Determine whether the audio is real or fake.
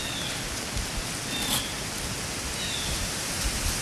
real